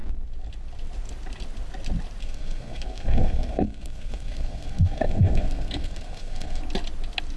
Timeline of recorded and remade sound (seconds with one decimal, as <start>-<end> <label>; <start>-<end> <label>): 0.0-2.2 recorded; 2.2-6.6 remade; 6.6-7.4 recorded